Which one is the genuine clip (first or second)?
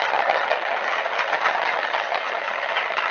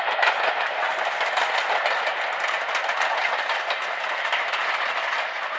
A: second